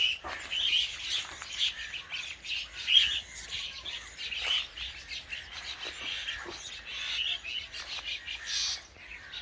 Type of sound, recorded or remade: recorded